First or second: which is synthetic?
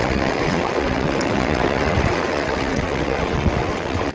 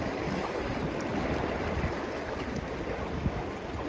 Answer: first